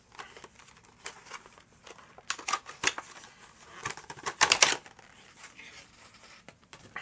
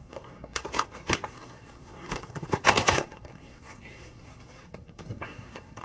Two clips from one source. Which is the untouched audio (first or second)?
first